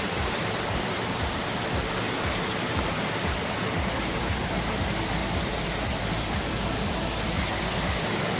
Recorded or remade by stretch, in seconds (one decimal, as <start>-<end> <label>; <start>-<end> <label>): 0.0-1.4 remade; 1.4-3.0 recorded; 3.0-5.2 remade; 5.2-6.1 recorded; 6.1-8.4 remade